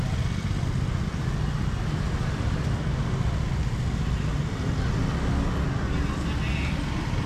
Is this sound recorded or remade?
recorded